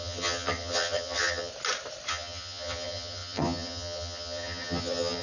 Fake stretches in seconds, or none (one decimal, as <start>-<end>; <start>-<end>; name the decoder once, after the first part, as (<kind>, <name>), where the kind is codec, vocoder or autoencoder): 0.0-1.5 (vocoder, HiFi-GAN); 2.1-5.2